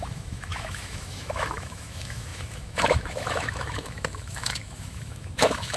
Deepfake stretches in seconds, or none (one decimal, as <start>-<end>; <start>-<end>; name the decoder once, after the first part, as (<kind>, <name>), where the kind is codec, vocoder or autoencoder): 0.0-5.8 (autoencoder, DAC-VAE)